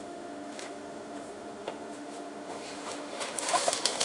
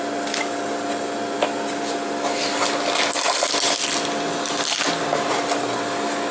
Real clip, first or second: second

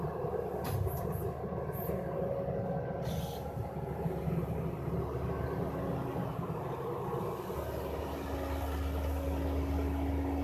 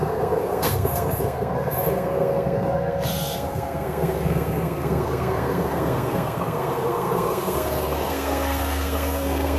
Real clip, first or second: first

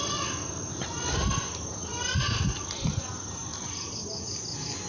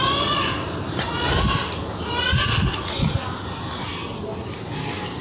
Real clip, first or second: second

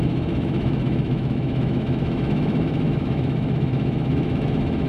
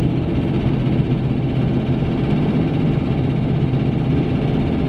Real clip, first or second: second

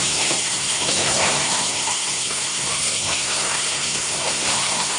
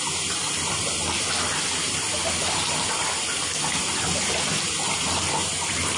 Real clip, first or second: second